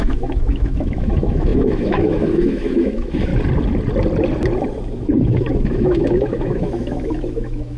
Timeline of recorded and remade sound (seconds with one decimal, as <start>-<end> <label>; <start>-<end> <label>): 0.0-3.3 remade; 3.3-4.9 recorded; 4.9-7.8 remade